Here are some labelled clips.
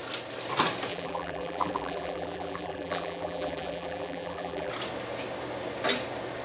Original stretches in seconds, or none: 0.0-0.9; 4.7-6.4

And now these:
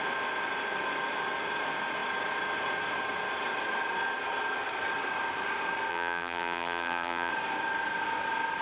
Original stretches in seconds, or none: 0.0-5.9; 7.3-8.6